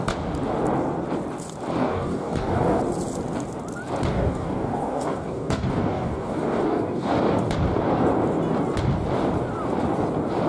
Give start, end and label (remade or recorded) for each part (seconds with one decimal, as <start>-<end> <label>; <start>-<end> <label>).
0.0-1.9 recorded; 1.9-2.8 remade; 2.8-4.1 recorded; 4.1-7.1 remade; 7.1-10.5 recorded